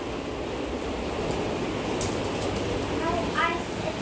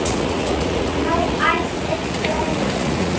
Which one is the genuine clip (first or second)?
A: first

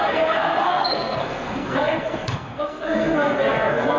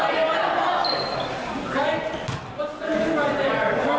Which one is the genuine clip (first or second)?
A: second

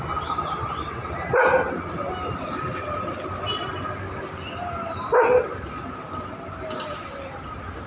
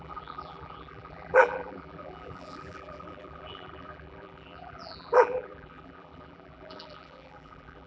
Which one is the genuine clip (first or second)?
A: first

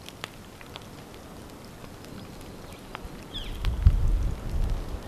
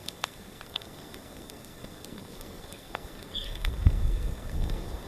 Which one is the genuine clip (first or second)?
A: first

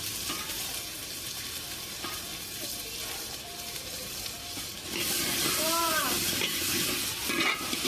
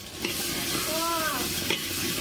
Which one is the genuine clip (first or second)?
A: second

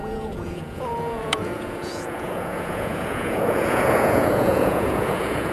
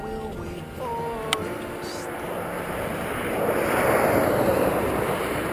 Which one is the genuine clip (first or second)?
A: second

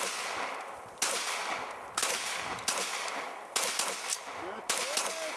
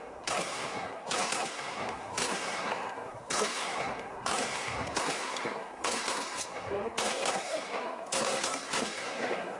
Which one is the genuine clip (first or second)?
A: first